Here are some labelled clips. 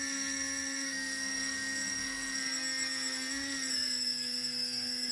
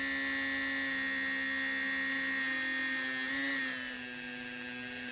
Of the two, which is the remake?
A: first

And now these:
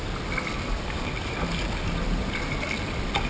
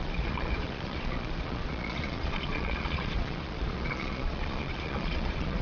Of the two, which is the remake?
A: second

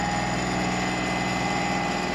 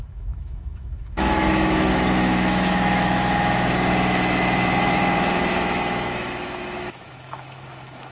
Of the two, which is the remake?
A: second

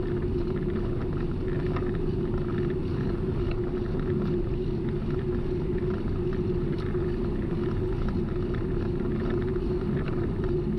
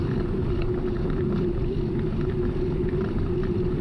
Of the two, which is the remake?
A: second